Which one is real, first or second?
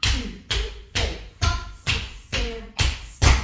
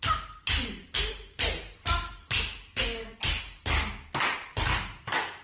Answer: second